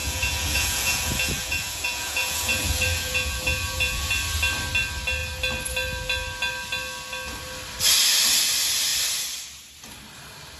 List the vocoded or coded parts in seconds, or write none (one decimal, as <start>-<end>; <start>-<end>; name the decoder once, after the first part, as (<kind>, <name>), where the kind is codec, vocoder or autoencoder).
0.0-4.1 (vocoder, Vocos)